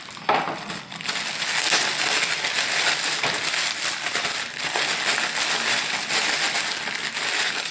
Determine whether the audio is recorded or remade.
recorded